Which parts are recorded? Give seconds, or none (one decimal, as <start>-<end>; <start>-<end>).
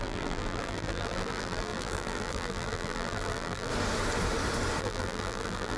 3.7-4.8